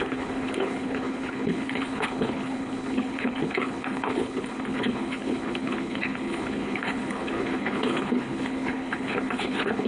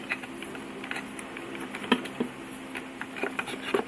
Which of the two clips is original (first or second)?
second